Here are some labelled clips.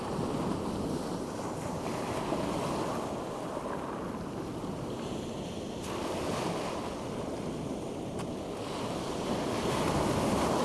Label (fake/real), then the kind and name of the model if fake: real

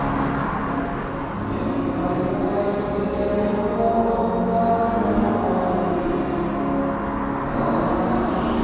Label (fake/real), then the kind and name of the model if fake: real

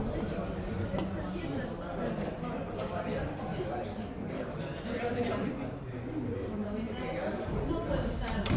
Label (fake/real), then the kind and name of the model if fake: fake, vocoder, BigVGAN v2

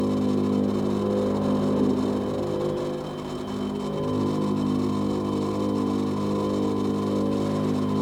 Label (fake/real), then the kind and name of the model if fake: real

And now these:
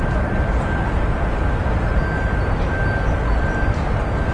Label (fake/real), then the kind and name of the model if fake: real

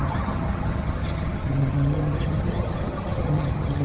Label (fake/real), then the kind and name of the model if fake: fake, vocoder, HiFi-GAN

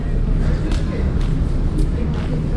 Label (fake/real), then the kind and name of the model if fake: real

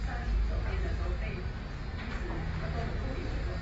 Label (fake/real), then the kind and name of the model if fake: real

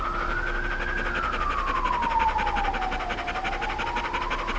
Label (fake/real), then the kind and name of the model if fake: real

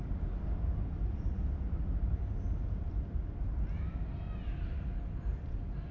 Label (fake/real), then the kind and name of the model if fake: real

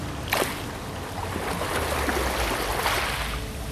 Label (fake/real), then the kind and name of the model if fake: real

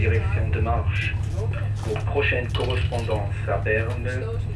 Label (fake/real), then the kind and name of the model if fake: real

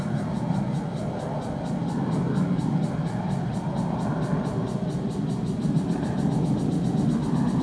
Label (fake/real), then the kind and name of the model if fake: real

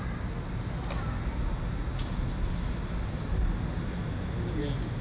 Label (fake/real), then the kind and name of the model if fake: real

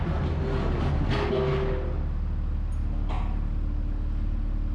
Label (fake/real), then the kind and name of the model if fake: real